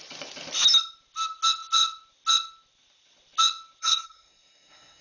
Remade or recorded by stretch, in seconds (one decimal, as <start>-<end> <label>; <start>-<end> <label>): 0.0-3.8 recorded; 3.8-5.0 remade